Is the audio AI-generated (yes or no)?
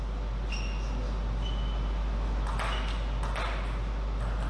no